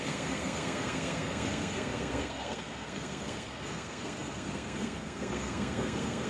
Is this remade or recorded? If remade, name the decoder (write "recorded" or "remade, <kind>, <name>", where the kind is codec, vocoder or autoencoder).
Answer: remade, codec, SNAC